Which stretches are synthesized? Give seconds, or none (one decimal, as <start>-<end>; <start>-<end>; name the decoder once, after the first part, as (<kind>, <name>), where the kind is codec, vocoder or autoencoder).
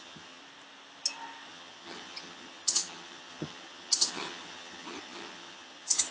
0.0-0.4 (vocoder, HiFi-GAN); 1.5-6.1